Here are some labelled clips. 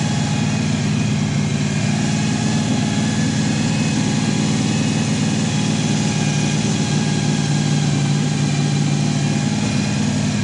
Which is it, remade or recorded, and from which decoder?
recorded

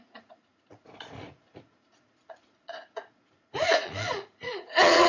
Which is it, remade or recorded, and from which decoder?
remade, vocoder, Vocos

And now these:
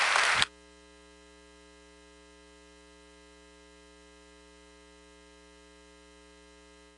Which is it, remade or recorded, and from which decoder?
recorded